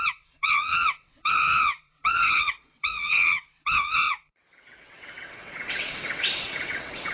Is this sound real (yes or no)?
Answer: no